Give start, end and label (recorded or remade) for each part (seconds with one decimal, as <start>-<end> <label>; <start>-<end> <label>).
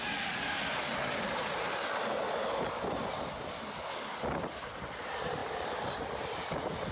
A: 0.0-6.9 recorded